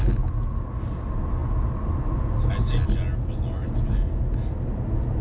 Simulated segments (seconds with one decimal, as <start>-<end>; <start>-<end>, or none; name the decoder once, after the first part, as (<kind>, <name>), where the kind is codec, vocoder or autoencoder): none